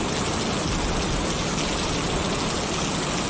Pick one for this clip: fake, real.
real